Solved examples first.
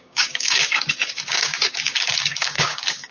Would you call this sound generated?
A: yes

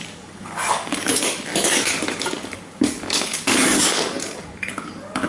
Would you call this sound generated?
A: yes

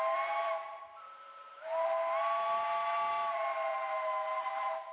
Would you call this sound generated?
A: no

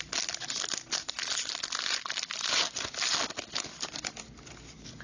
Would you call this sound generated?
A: no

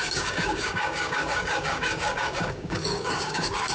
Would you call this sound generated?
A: yes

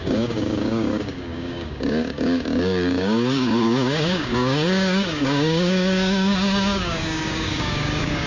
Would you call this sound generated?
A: yes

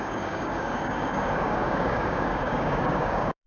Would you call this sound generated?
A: yes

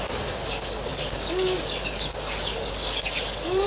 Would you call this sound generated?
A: yes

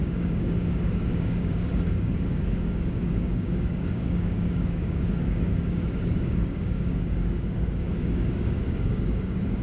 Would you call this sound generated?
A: yes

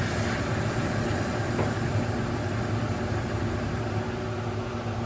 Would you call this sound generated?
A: no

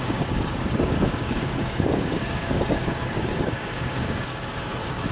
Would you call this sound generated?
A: yes